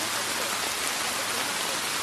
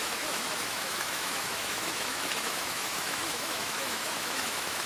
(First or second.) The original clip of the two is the first